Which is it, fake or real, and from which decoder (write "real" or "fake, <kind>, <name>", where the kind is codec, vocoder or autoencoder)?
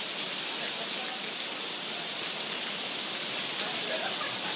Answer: real